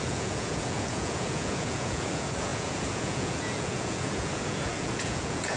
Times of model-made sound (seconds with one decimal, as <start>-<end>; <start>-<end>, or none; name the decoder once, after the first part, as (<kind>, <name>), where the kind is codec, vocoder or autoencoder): 0.0-5.6 (vocoder, Vocos)